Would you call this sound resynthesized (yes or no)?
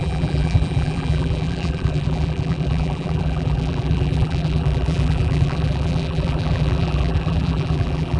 yes